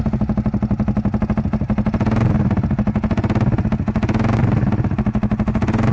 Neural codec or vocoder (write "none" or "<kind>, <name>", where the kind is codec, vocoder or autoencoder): none